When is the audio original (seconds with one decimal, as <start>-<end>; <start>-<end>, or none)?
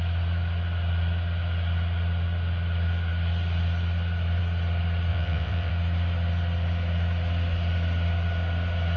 0.0-5.1; 5.7-9.0